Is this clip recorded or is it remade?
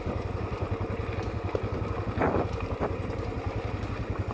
recorded